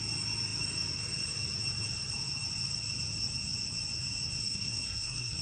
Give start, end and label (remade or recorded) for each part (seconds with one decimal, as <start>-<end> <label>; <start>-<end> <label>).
0.0-4.4 recorded; 4.4-5.4 remade